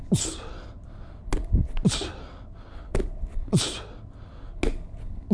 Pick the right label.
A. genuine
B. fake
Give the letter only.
A